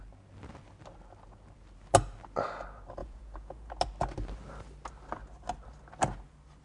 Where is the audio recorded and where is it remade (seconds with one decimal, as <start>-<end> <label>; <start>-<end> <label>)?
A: 0.0-3.0 recorded; 3.0-3.7 remade; 3.7-6.6 recorded